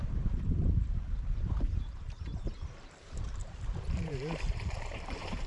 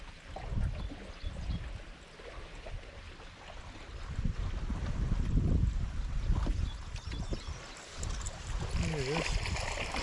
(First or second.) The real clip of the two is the second